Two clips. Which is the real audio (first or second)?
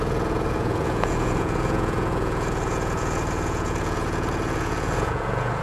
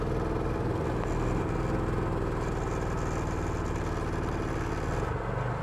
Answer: second